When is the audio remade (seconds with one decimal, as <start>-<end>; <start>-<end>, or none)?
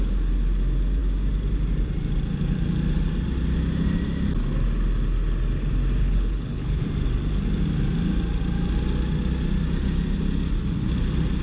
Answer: 6.0-6.8